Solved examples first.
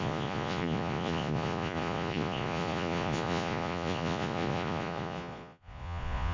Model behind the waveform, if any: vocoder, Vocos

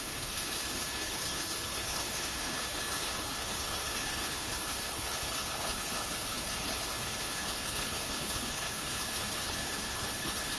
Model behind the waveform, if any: codec, HILCodec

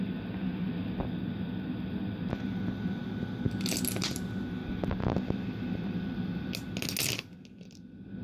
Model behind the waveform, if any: none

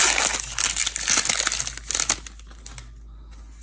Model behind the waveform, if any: none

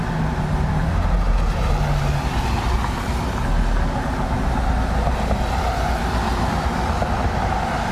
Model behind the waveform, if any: none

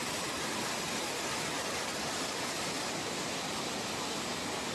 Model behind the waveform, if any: none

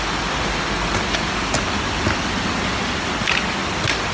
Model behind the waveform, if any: none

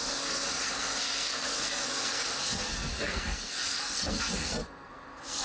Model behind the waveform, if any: codec, SNAC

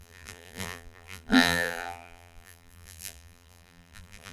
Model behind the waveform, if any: vocoder, BigVGAN v2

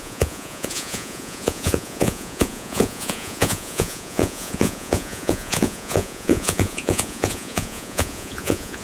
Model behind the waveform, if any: vocoder, Vocos